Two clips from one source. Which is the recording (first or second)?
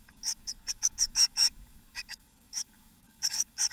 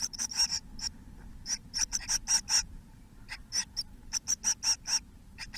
second